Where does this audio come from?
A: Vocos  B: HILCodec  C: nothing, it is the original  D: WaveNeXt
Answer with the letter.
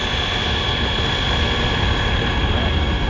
C